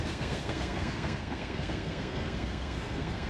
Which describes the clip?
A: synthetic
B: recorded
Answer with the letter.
A